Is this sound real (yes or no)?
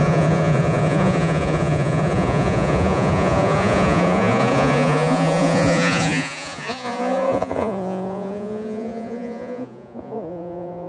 no